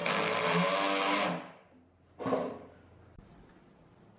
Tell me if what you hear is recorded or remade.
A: recorded